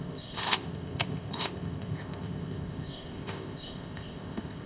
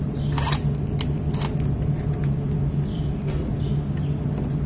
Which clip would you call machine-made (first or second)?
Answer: first